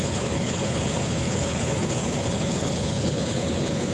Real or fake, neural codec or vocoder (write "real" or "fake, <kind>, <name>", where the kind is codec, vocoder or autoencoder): fake, codec, HILCodec